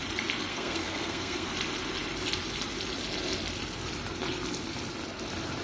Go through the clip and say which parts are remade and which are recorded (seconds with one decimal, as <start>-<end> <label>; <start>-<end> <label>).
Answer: 0.0-0.5 recorded; 0.5-1.5 remade; 1.5-5.6 recorded